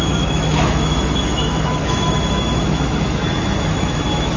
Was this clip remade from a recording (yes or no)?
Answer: yes